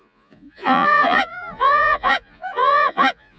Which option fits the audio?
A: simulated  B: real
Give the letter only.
A